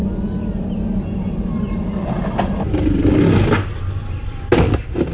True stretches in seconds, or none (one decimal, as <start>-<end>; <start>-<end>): 0.0-5.1